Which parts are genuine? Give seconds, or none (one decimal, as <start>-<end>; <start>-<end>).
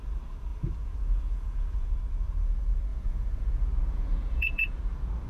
0.0-0.5; 1.9-2.9; 4.8-5.3